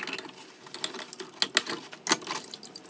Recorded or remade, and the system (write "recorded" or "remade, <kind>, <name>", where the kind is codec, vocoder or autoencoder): recorded